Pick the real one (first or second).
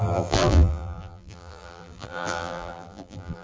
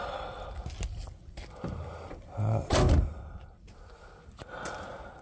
second